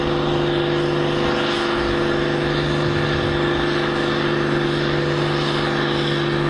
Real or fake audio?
real